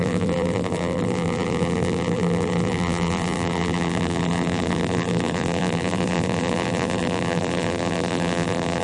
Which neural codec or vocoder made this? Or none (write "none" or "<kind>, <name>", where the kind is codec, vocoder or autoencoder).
vocoder, BigVGAN v2